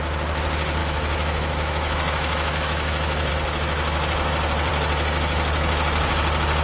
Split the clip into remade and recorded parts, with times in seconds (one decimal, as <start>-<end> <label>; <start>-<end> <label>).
0.0-0.8 recorded; 0.8-3.3 remade; 3.3-6.6 recorded